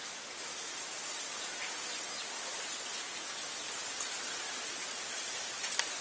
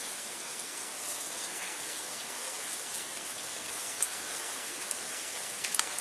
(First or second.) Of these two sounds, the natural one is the first